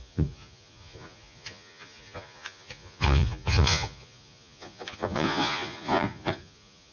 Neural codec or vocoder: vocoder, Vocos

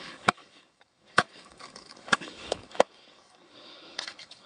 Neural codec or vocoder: codec, DAC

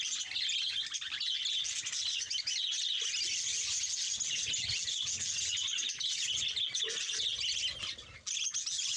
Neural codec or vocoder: none